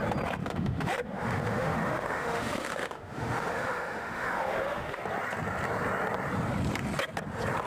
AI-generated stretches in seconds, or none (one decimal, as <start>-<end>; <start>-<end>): 0.4-5.0